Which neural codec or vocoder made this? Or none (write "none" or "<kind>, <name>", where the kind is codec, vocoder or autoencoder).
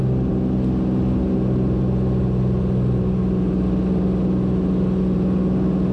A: none